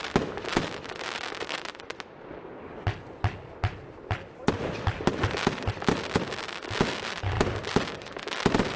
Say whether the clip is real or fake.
real